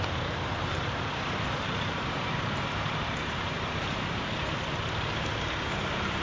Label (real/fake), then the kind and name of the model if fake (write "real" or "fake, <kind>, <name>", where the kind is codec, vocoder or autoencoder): fake, vocoder, BigVGAN v2